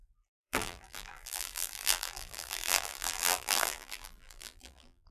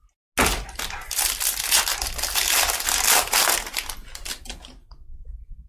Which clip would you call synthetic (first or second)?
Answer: first